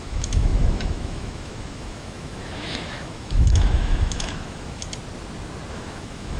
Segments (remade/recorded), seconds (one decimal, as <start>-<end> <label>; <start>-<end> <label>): 0.0-4.8 remade; 4.8-5.7 recorded; 5.7-6.4 remade